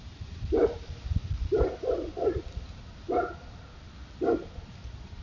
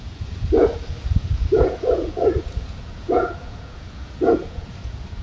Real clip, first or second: first